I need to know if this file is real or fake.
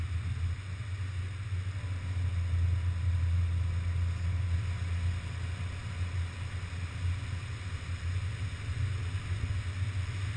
real